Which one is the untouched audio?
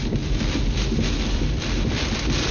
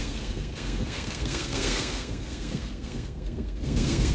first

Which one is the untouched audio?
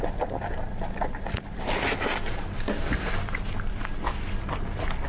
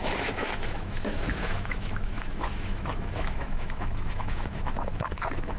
first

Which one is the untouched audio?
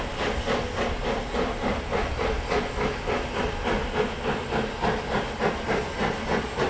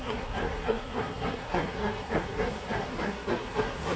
first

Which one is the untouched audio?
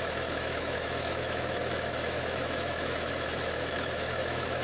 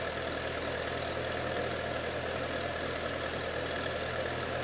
second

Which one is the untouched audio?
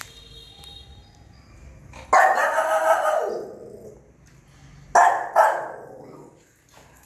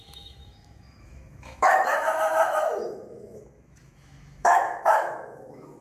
first